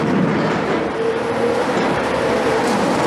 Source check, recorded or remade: remade